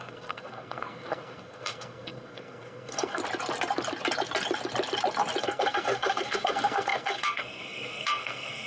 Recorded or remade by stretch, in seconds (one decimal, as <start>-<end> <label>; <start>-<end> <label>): 0.0-3.2 remade; 3.2-5.4 recorded; 5.4-8.7 remade